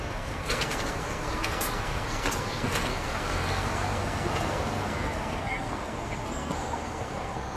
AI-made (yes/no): yes